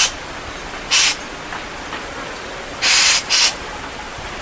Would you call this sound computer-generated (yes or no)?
no